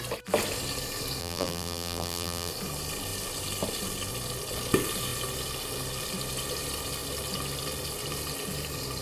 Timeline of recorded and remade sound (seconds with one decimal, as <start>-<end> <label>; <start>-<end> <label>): 0.0-1.2 recorded; 1.2-2.5 remade; 2.5-9.0 recorded